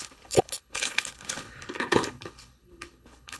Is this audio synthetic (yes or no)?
yes